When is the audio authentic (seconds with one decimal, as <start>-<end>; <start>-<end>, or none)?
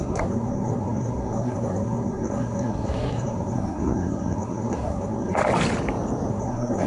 5.4-6.3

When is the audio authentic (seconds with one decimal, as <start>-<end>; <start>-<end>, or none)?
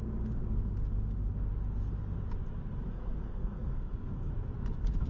0.0-2.9; 4.3-5.1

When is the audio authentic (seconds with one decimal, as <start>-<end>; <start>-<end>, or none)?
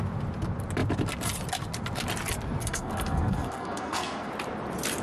0.0-2.6; 4.3-5.0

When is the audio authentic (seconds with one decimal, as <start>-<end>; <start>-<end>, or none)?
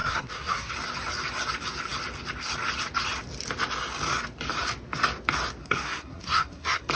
0.7-5.6